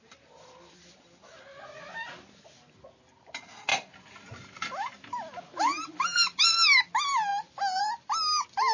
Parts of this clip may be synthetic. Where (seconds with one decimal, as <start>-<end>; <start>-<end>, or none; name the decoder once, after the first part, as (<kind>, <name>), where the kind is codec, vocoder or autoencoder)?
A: none